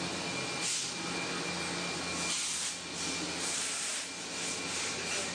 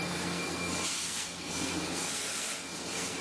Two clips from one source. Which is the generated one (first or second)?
second